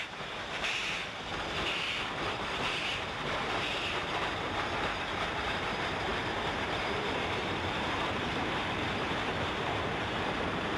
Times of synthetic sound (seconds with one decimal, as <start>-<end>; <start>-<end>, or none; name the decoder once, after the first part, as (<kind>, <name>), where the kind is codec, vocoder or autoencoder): 0.0-1.3 (vocoder, BigVGAN v2); 2.3-10.8